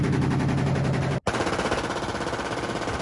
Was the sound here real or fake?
real